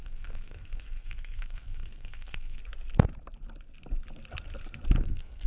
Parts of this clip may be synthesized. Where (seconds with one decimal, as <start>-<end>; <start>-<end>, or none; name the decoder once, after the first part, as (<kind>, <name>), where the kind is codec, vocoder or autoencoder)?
0.0-2.6 (codec, SNAC); 5.0-5.5